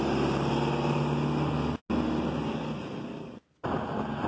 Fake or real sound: real